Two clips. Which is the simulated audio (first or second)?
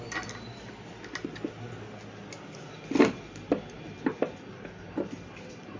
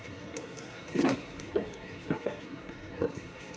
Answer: second